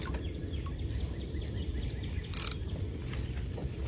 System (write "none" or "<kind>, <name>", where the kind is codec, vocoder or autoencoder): none